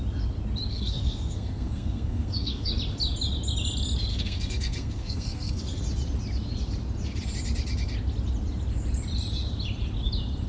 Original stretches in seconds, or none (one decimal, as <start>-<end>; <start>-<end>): 0.0-0.7; 2.7-4.1; 5.8-10.5